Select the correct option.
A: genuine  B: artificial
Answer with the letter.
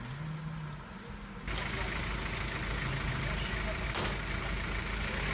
A